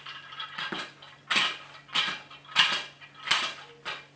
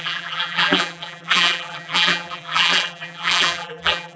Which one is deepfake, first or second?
second